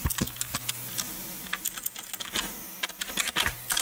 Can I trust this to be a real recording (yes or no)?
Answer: yes